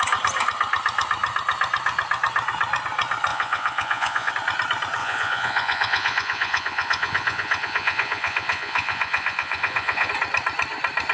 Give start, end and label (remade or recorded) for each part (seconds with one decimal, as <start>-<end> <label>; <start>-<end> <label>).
0.0-3.3 recorded; 3.3-4.3 remade; 4.3-5.0 recorded; 5.0-10.1 remade; 10.1-11.1 recorded